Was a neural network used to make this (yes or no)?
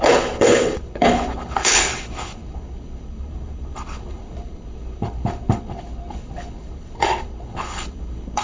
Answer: yes